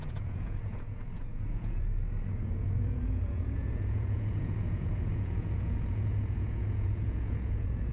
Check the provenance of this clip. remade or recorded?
remade